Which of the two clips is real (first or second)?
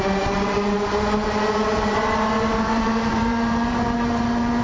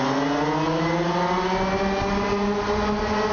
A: second